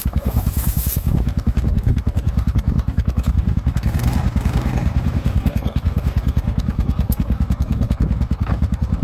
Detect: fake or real fake